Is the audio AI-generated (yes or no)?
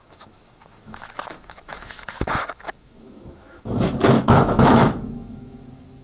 yes